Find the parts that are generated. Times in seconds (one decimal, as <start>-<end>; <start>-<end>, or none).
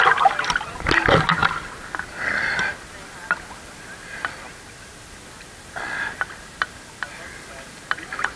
none